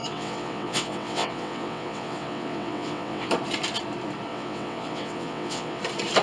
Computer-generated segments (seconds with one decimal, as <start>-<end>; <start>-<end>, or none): 0.0-3.3; 4.3-5.8